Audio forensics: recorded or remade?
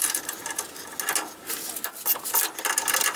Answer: recorded